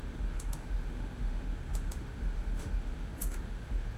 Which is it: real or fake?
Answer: fake